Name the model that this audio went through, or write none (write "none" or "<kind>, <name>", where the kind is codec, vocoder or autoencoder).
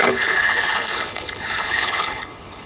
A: codec, HILCodec